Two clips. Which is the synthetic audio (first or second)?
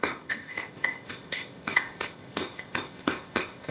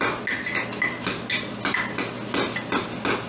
first